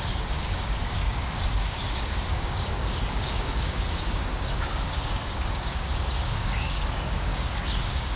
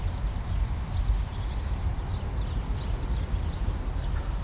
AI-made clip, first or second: first